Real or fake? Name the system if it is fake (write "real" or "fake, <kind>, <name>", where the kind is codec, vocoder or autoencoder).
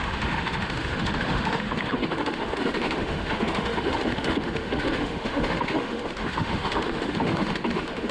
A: fake, autoencoder, DAC-VAE